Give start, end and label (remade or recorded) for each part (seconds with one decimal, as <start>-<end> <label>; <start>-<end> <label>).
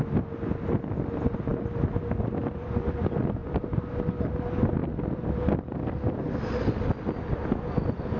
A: 0.0-2.4 recorded; 2.4-3.0 remade; 3.0-3.4 recorded; 3.4-4.0 remade; 4.0-4.8 recorded; 4.8-6.4 remade; 6.4-8.2 recorded